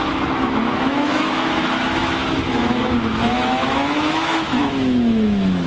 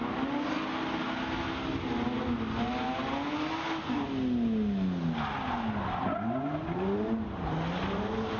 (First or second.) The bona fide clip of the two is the second